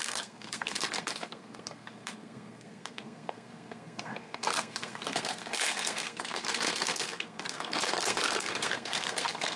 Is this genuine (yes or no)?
no